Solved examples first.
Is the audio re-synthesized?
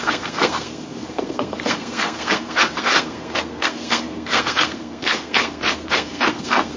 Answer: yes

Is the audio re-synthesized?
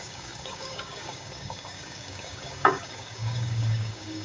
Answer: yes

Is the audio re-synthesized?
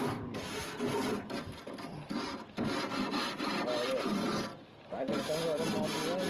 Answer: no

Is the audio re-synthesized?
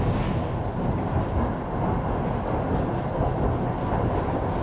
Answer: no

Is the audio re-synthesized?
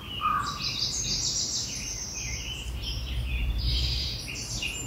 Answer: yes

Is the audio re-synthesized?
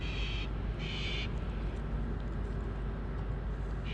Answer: no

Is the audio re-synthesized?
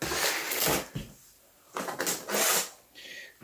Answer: no